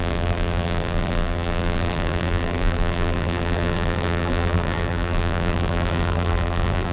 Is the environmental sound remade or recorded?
remade